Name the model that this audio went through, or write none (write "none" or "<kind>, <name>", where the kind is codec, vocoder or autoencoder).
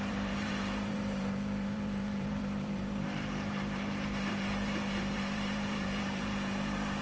vocoder, BigVGAN v2